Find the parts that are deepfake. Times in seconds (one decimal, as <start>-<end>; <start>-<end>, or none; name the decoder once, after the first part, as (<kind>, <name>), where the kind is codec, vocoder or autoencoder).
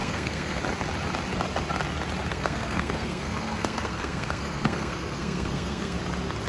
0.0-0.6 (codec, SNAC); 2.3-6.0